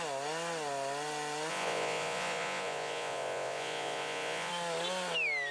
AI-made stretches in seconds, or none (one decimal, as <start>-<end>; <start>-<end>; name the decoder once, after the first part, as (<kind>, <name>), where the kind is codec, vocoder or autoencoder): 1.5-4.5 (vocoder, Vocos)